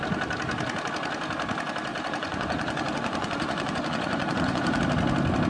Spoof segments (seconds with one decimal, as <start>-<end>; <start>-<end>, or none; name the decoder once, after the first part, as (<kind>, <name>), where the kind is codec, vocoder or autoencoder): 1.9-4.8 (vocoder, Vocos)

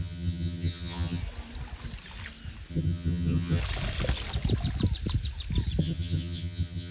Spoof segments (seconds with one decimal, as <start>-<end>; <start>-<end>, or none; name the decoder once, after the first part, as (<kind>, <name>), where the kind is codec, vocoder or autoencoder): 0.0-1.2 (vocoder, HiFi-GAN); 2.7-3.6; 5.8-6.9

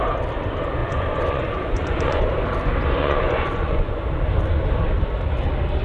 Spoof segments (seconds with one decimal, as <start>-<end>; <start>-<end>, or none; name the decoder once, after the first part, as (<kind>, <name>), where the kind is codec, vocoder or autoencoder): 0.8-2.2 (vocoder, Vocos); 3.0-4.0

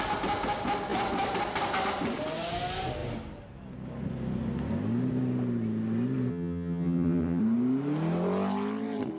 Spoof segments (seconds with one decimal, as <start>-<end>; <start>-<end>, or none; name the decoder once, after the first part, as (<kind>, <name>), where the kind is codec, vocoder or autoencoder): 6.3-7.4 (vocoder, HiFi-GAN)

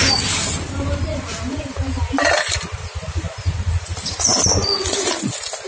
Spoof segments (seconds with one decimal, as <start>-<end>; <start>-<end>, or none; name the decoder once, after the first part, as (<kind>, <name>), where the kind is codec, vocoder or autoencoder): none